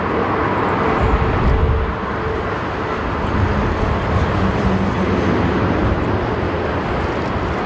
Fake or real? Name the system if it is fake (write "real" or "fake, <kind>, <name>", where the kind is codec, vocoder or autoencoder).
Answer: real